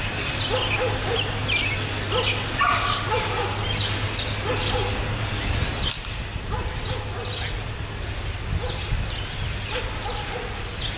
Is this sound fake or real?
real